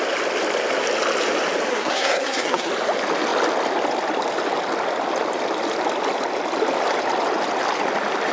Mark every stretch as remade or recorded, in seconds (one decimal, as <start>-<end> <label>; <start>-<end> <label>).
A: 0.0-1.7 recorded; 1.7-2.7 remade; 2.7-8.3 recorded